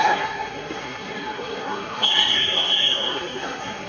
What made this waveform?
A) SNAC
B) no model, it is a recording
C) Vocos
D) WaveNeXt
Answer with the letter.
A